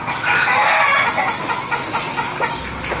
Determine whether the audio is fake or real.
real